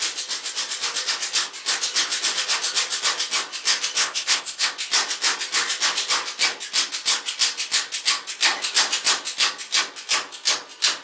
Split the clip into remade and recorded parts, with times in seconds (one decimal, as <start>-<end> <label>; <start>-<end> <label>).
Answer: 0.0-4.0 recorded; 4.0-4.7 remade; 4.7-11.0 recorded